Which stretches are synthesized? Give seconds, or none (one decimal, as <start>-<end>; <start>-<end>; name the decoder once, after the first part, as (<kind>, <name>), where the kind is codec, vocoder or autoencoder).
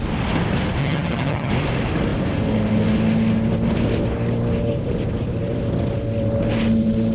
0.8-1.5 (vocoder, HiFi-GAN)